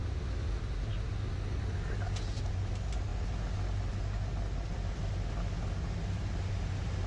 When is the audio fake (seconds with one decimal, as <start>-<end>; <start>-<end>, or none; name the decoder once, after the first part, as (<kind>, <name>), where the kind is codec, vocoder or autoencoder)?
none